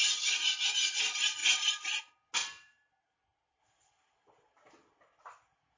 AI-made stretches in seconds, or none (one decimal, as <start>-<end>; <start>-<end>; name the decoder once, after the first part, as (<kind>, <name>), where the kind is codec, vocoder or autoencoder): 1.4-2.0 (vocoder, BigVGAN v2); 2.4-3.6